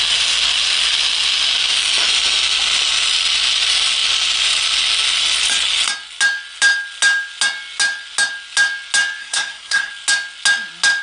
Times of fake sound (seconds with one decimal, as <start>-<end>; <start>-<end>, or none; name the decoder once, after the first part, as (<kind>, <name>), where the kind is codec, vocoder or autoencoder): 9.2-9.9 (codec, SNAC)